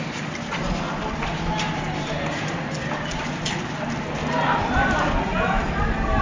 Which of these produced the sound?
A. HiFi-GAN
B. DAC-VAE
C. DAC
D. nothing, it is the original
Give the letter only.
D